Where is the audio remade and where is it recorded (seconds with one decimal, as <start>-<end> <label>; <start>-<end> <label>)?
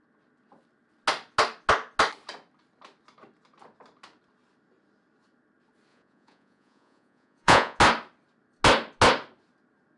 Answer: 0.0-5.9 recorded; 5.9-7.8 remade; 7.8-10.0 recorded